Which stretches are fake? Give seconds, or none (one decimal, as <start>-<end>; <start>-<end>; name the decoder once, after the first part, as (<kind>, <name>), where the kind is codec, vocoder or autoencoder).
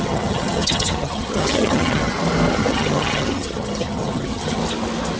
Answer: 0.0-2.1 (vocoder, HiFi-GAN); 2.6-4.6